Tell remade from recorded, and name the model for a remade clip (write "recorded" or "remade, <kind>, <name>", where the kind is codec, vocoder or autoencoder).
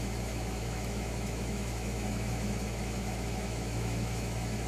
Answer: remade, autoencoder, DAC-VAE